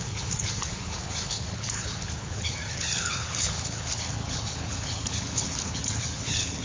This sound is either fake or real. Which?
fake